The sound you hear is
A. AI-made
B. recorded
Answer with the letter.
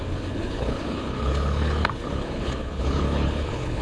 A